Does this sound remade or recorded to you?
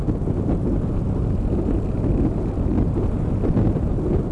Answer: recorded